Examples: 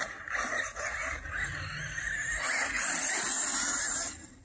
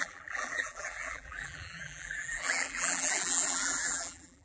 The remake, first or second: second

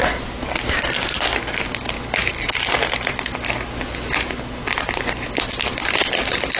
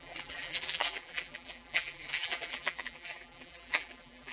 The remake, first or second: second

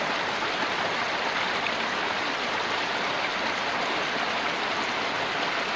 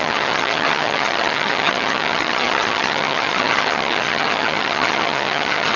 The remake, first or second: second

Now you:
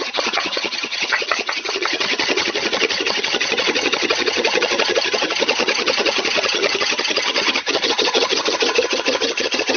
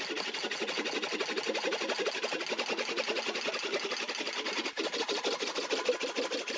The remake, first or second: first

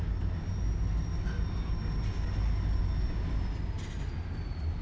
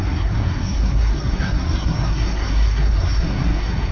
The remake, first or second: second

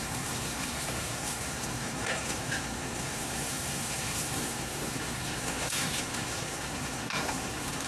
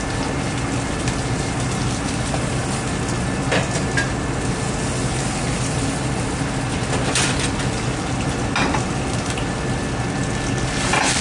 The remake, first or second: first